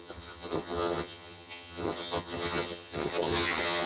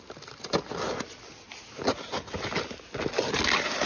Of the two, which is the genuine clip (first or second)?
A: second